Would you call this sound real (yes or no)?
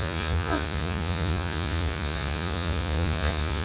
no